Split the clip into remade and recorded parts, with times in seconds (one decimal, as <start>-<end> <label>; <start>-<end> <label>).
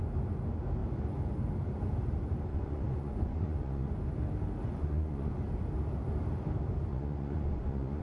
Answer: 0.0-2.5 recorded; 2.5-3.9 remade; 3.9-4.7 recorded; 4.7-5.3 remade; 5.3-6.9 recorded; 6.9-8.0 remade